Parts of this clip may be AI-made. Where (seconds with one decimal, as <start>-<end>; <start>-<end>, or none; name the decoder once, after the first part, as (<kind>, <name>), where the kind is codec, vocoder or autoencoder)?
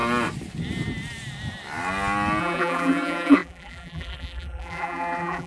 2.4-5.5 (vocoder, BigVGAN v2)